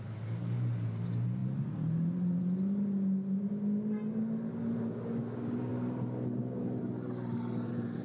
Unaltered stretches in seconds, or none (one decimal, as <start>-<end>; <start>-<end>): 0.0-8.0